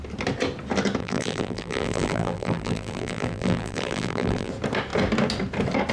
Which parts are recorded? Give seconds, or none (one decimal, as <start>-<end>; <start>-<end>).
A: 0.0-1.0; 4.5-5.9